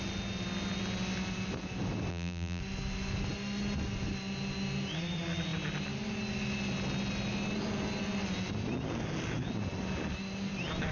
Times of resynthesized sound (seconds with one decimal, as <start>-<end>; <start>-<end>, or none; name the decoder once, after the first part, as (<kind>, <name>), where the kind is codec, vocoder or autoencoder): 2.1-2.6 (vocoder, BigVGAN v2)